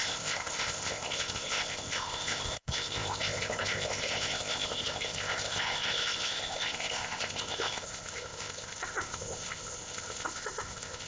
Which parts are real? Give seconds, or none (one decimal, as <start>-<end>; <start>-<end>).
none